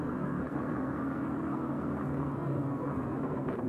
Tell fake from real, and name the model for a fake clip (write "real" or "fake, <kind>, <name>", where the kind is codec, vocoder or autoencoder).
fake, codec, SNAC